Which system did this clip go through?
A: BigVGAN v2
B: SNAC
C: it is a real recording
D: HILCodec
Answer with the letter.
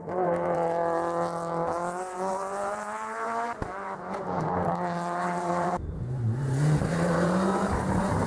A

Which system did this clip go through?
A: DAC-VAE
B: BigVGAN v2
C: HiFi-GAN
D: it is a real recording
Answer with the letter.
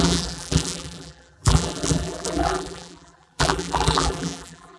B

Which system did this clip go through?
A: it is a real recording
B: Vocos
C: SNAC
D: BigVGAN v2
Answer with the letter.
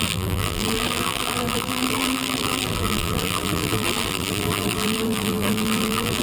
D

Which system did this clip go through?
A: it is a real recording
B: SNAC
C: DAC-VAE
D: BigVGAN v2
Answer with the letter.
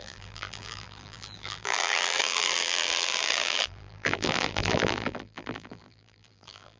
D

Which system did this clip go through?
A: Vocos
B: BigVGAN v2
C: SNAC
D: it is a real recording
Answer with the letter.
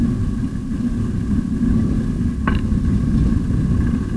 D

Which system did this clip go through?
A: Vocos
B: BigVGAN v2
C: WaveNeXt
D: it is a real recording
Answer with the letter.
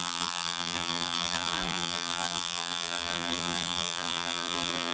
B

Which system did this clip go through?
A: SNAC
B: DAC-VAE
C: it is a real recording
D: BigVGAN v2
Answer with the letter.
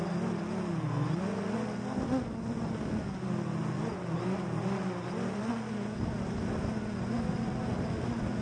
C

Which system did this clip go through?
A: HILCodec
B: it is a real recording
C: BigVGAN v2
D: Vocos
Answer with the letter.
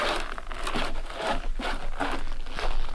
B